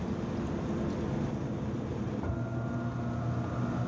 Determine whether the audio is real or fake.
real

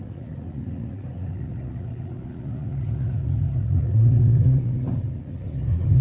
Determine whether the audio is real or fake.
fake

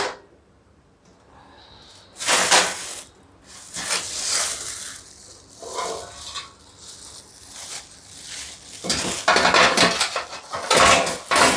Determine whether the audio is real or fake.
real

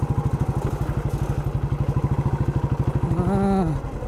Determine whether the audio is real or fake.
real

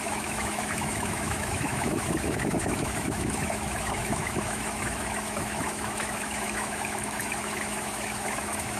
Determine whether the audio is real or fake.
fake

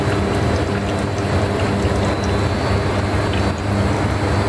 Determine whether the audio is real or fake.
real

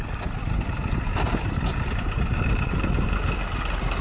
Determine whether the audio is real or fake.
real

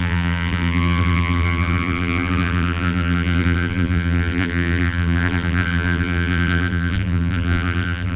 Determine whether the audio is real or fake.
fake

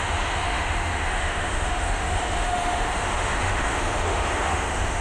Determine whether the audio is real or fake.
fake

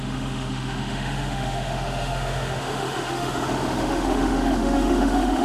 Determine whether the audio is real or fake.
fake